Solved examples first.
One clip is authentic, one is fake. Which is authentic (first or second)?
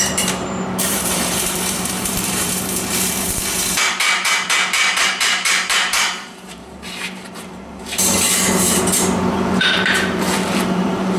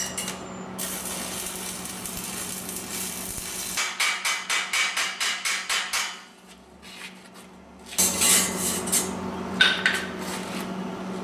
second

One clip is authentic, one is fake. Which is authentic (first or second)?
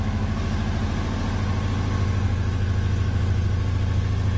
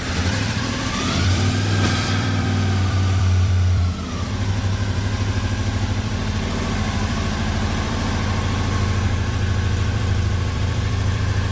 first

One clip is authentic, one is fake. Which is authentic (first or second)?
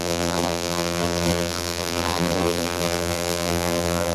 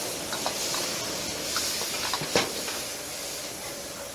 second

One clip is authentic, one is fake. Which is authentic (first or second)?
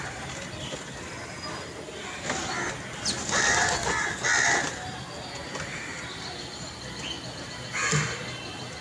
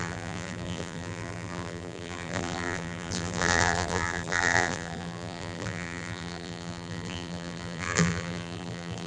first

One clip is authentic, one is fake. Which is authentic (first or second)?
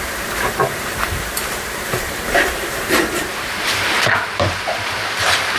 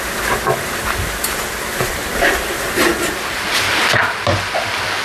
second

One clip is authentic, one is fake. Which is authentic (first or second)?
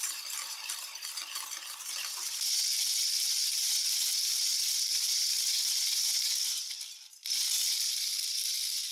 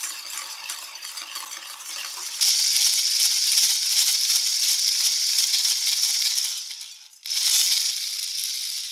second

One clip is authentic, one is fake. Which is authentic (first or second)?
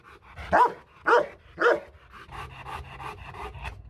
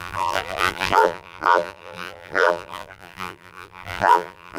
first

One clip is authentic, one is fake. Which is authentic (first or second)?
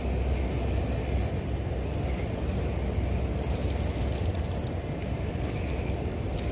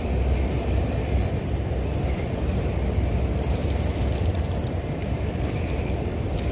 first